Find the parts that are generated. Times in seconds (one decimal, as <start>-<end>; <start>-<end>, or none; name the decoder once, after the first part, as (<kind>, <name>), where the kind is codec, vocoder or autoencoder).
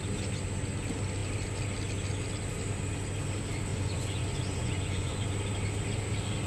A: 3.7-5.2 (vocoder, Vocos)